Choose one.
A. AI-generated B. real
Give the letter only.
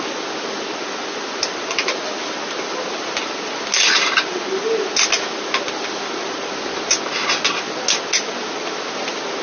B